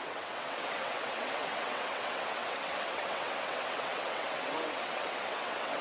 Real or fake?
fake